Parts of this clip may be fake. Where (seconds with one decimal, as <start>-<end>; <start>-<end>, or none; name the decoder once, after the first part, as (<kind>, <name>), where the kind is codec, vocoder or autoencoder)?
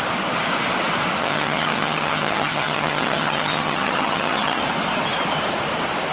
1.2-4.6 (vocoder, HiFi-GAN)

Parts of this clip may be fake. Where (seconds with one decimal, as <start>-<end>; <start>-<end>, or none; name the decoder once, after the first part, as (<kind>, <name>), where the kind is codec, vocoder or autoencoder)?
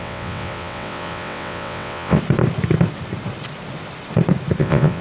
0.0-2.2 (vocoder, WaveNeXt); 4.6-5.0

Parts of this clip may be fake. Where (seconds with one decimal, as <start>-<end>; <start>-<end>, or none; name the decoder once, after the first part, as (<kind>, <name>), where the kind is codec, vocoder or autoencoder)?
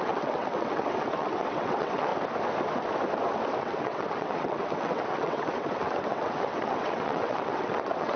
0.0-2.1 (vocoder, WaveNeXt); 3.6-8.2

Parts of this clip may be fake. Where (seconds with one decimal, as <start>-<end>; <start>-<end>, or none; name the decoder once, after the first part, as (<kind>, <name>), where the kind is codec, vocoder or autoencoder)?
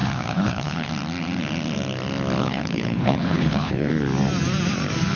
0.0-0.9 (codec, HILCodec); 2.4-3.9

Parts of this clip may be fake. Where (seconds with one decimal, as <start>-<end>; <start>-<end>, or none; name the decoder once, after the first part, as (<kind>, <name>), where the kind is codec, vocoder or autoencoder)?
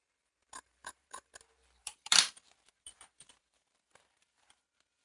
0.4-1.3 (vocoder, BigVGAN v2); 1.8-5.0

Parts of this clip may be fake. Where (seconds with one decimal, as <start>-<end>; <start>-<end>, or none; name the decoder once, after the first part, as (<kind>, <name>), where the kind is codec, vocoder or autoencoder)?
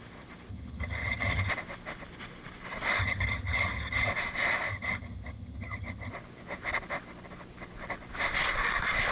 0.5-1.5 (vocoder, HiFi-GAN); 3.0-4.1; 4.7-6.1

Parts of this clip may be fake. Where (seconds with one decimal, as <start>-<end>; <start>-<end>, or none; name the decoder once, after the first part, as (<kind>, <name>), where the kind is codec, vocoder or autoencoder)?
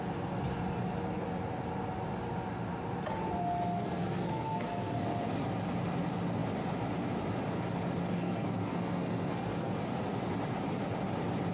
3.8-5.0 (codec, SNAC); 8.2-9.7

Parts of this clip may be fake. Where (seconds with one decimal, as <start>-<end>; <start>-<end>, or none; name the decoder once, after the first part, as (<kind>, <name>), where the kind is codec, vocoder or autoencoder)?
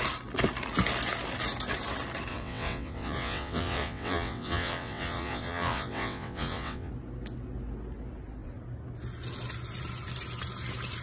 2.3-6.9 (vocoder, WaveNeXt)